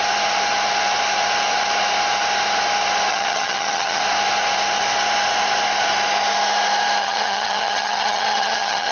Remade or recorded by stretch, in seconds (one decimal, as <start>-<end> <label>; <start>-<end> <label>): 0.0-3.1 recorded; 3.1-4.0 remade; 4.0-7.0 recorded; 7.0-8.9 remade